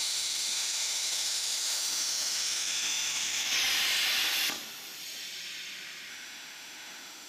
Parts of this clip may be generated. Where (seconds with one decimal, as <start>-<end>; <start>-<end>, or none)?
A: 0.0-3.5; 6.1-7.3